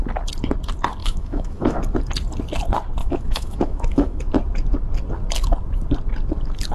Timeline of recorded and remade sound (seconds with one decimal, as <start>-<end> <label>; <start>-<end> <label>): 0.0-1.0 recorded; 1.0-1.8 remade; 1.8-3.0 recorded; 3.0-4.2 remade; 4.2-6.7 recorded